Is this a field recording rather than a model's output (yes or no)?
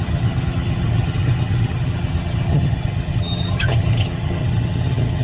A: no